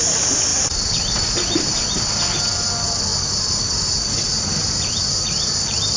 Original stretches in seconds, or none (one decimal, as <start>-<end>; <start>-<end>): 0.0-0.5; 1.7-3.1

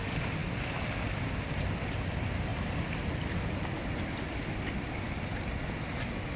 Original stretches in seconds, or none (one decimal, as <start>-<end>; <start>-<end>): 0.0-6.4

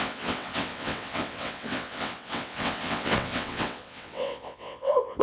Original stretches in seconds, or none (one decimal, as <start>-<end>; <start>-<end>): none

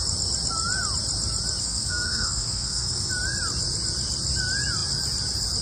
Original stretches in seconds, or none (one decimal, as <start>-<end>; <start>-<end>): 0.0-1.6; 3.1-5.6

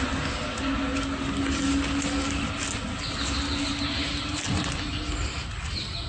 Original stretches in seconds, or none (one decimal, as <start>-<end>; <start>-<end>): 0.0-6.1

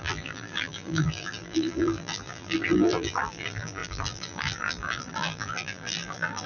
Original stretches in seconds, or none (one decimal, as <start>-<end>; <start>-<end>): none

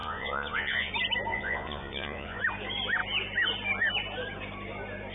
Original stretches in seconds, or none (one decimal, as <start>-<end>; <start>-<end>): 0.9-1.3; 2.4-5.1

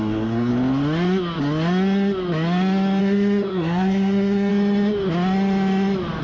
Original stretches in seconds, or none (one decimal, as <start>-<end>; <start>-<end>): 0.5-3.0; 4.5-6.2